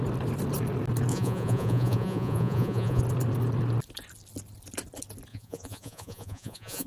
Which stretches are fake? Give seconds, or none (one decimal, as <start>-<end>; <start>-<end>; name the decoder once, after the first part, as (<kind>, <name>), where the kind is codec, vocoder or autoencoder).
1.1-3.0 (vocoder, Vocos); 5.3-6.9